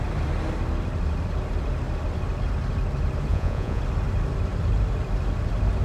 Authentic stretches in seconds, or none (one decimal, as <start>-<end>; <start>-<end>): 0.0-3.3; 3.8-5.8